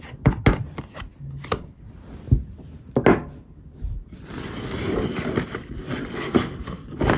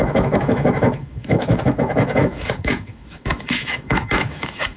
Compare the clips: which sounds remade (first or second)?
second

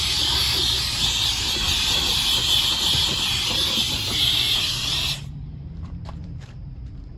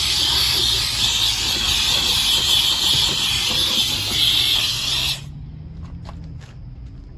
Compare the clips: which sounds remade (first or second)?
first